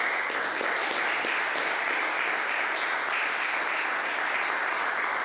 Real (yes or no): yes